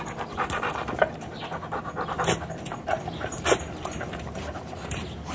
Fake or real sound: real